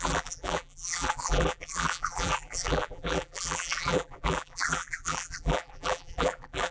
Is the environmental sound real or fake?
fake